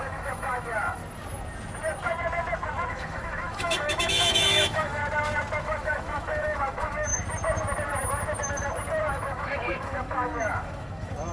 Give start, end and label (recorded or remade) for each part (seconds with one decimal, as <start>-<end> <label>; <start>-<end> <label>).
0.0-1.0 remade; 1.0-2.9 recorded; 2.9-5.0 remade; 5.0-5.6 recorded; 5.6-7.1 remade; 7.1-9.1 recorded; 9.1-11.3 remade